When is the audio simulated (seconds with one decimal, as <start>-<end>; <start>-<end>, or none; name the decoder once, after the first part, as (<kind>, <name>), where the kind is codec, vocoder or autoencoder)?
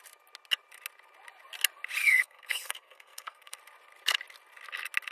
2.0-3.6 (codec, SNAC)